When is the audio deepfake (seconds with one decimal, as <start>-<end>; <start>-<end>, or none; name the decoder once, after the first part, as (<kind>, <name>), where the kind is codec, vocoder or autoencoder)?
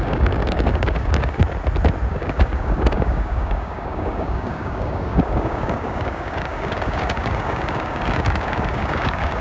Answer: 0.0-1.4 (codec, DAC); 2.1-9.4